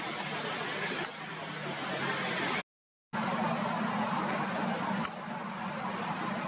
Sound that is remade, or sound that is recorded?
recorded